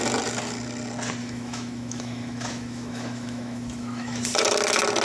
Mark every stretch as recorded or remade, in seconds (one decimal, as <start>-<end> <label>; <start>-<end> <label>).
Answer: 0.0-1.2 recorded; 1.2-4.2 remade; 4.2-5.0 recorded